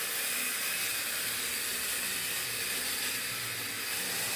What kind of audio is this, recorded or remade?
recorded